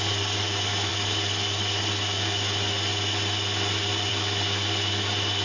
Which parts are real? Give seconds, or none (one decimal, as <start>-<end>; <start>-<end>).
0.0-5.4